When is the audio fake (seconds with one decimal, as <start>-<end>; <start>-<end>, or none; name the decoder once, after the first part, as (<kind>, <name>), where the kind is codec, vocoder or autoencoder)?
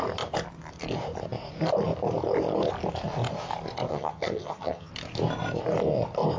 3.9-4.9 (vocoder, HiFi-GAN)